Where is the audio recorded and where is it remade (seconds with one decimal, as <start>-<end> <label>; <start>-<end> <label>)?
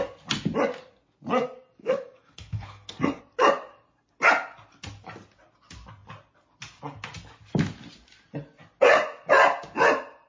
0.0-1.8 recorded; 1.8-3.2 remade; 3.2-10.3 recorded